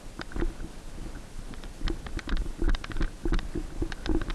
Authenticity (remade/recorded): remade